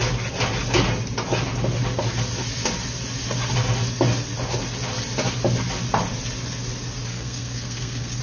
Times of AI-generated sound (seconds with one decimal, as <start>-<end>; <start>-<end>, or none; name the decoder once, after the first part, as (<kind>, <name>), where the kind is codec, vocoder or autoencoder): 7.1-8.2 (codec, SNAC)